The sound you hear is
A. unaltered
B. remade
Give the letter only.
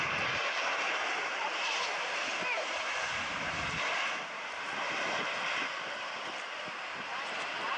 B